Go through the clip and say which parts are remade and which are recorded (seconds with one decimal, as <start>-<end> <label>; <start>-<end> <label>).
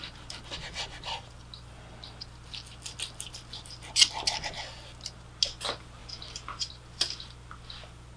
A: 0.0-8.2 recorded